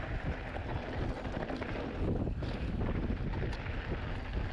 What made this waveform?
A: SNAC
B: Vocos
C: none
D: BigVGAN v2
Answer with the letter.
C